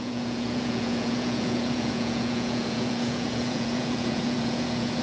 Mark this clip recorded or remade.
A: remade